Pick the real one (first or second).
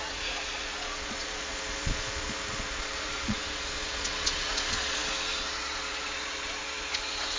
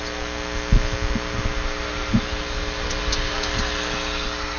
second